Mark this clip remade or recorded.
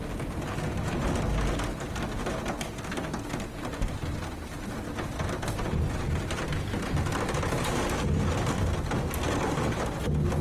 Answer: recorded